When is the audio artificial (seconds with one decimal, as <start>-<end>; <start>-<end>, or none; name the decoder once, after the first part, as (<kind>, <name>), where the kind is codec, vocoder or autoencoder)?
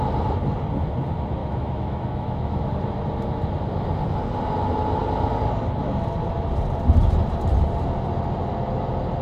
1.4-2.7 (autoencoder, DAC-VAE)